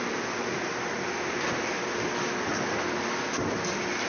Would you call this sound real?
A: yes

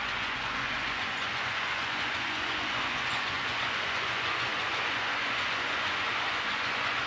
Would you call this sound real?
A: no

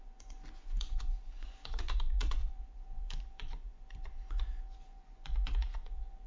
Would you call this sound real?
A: no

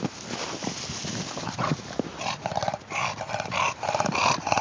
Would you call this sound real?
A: yes